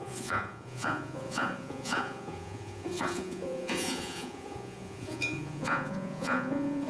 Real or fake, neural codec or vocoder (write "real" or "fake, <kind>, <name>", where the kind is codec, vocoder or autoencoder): fake, vocoder, Vocos